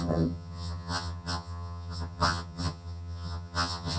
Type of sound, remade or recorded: remade